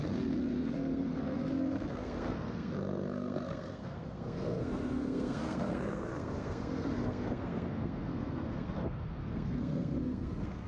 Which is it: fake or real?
fake